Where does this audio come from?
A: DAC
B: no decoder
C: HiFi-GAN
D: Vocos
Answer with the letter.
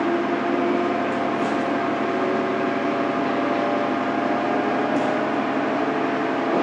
B